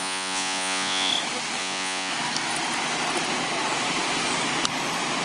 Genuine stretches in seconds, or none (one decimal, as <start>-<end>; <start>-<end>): 1.1-1.6; 2.1-5.2